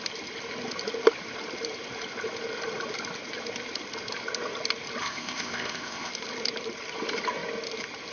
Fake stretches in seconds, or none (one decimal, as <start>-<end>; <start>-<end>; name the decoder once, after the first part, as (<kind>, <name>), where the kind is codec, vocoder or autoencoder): 5.0-6.1 (codec, ZipCodec)